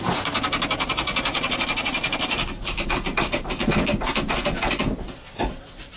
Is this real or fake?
real